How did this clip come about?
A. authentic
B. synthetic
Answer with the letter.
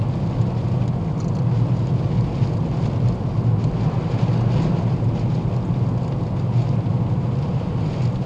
A